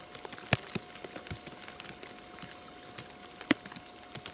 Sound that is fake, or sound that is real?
real